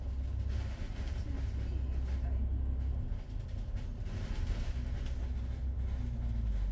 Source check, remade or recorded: recorded